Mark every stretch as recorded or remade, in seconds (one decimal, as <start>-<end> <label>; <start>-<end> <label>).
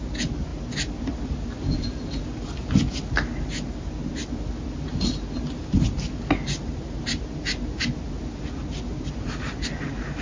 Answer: 0.0-10.2 recorded